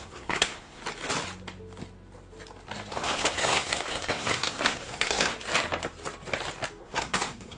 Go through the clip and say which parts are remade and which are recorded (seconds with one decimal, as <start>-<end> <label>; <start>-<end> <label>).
0.0-0.8 remade; 0.8-2.9 recorded; 2.9-5.3 remade; 5.3-6.8 recorded; 6.8-7.6 remade